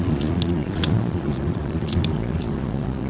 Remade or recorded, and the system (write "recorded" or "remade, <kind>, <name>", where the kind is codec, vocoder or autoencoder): remade, vocoder, Vocos